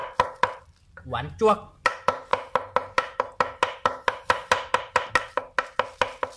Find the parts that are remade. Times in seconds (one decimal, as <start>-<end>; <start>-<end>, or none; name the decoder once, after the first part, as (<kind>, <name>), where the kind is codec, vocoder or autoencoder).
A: none